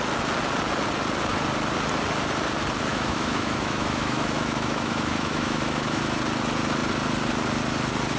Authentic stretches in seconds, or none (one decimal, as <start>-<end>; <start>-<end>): 0.0-2.9; 6.0-8.2